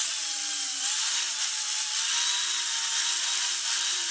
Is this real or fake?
fake